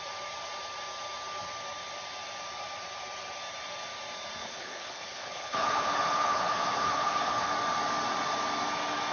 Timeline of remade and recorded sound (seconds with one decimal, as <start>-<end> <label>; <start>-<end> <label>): 0.0-4.4 recorded; 4.4-7.5 remade; 7.5-9.1 recorded